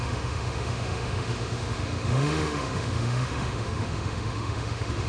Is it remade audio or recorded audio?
remade